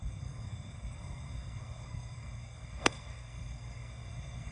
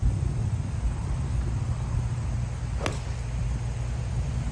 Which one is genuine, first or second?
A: second